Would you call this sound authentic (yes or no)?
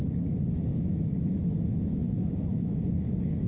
no